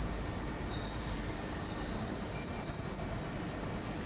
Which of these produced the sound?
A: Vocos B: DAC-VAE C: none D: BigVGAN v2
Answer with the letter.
D